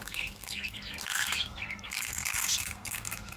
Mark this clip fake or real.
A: fake